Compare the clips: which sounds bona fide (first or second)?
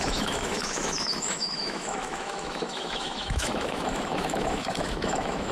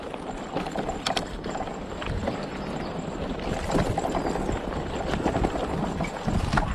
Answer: second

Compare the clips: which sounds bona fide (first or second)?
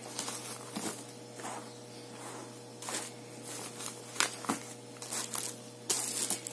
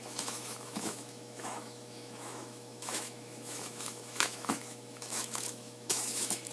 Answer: first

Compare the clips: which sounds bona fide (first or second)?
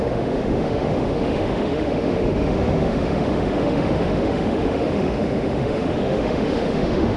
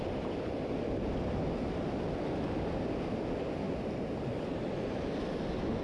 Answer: second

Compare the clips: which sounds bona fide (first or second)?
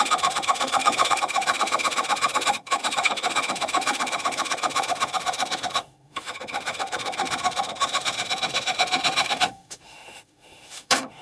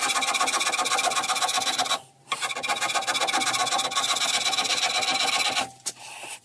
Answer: second